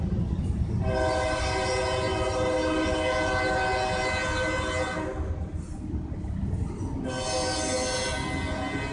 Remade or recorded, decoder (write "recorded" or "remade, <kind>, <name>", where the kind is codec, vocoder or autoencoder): recorded